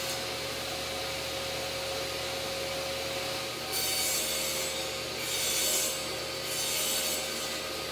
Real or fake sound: real